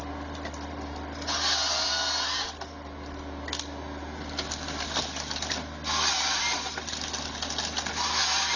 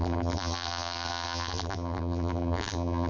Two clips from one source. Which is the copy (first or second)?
second